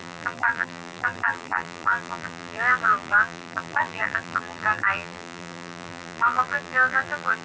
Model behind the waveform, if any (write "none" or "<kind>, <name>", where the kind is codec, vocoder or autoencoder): vocoder, BigVGAN v2